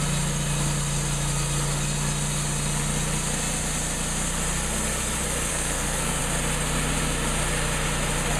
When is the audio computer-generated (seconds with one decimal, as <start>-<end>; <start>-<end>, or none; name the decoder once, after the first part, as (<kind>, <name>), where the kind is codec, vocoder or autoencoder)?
5.5-6.2 (codec, SNAC)